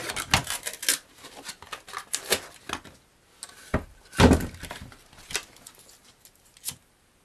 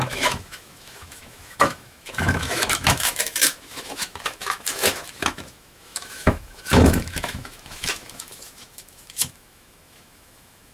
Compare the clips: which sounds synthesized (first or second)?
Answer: second